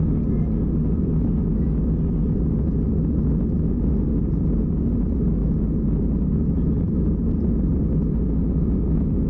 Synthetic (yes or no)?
no